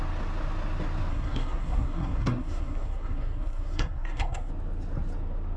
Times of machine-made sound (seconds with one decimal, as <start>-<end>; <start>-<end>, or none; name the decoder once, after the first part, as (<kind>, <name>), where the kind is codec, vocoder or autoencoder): 1.1-4.5 (codec, SNAC)